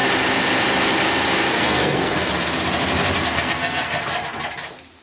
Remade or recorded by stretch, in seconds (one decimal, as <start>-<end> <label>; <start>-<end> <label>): 0.0-1.5 recorded; 1.5-2.3 remade; 2.3-3.3 recorded; 3.3-4.0 remade; 4.0-5.0 recorded